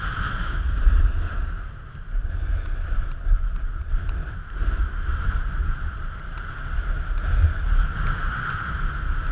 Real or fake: real